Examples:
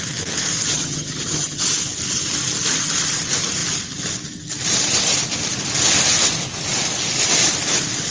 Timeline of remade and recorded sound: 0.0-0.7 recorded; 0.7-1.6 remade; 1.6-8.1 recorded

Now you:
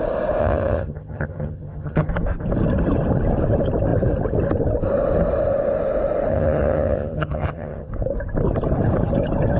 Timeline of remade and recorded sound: 0.0-0.4 recorded; 0.4-2.1 remade; 2.1-6.3 recorded; 6.3-7.9 remade; 7.9-9.6 recorded

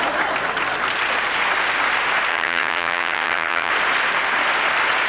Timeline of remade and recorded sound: 0.0-2.3 recorded; 2.3-3.7 remade; 3.7-5.1 recorded

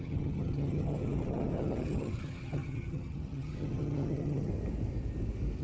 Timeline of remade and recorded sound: 0.0-4.5 remade; 4.5-5.6 recorded

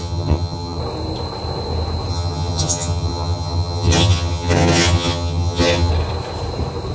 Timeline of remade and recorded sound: 0.0-0.8 remade; 0.8-2.1 recorded; 2.1-5.9 remade; 5.9-6.9 recorded